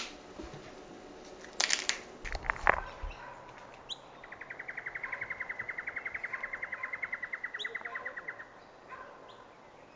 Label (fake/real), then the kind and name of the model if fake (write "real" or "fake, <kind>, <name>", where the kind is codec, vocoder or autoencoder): real